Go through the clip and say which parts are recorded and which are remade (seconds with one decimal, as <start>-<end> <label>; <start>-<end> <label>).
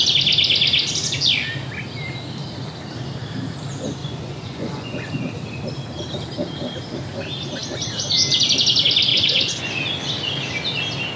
0.0-4.0 recorded; 4.0-5.3 remade; 5.3-9.1 recorded; 9.1-9.7 remade; 9.7-11.2 recorded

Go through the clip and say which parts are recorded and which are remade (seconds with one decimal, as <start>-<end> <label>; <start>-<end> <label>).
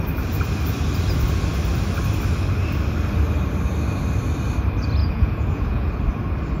0.0-5.0 recorded; 5.0-5.9 remade; 5.9-6.6 recorded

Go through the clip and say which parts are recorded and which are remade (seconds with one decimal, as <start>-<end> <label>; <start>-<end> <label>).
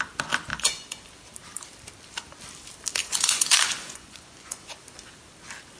0.0-0.5 recorded; 0.5-1.1 remade; 1.1-3.0 recorded; 3.0-4.7 remade; 4.7-5.8 recorded